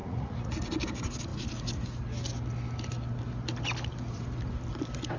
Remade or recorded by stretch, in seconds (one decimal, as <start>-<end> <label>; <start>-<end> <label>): 0.0-0.5 remade; 0.5-5.2 recorded